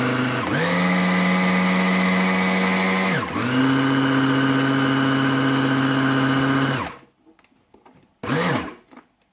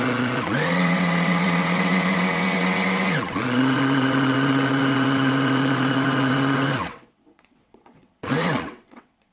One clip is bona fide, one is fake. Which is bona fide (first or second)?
first